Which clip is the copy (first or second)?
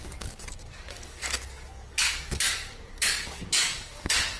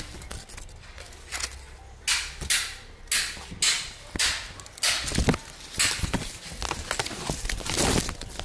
first